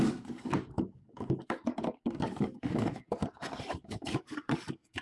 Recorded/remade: remade